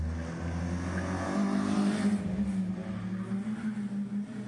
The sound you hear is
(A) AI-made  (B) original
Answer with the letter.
B